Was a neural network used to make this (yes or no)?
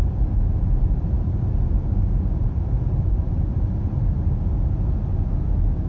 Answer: no